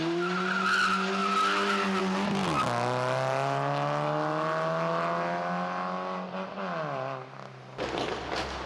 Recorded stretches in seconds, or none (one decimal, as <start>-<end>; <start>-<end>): 0.0-8.7